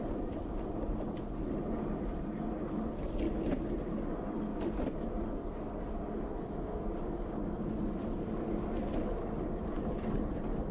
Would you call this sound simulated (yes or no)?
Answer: no